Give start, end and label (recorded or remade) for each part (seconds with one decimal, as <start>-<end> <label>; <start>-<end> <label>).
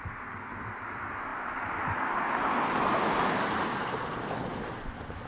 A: 0.0-5.3 recorded